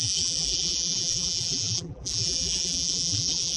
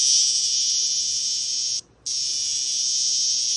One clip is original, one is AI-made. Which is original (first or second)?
second